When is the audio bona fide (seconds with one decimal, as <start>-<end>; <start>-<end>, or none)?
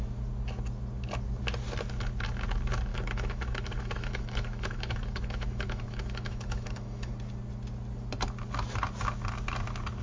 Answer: 0.0-2.9; 7.1-10.0